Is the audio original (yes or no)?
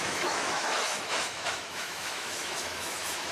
no